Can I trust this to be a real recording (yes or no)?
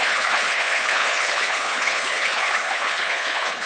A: no